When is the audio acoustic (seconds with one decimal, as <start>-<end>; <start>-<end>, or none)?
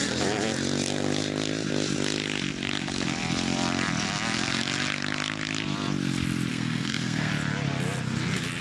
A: 0.0-6.5; 7.3-8.6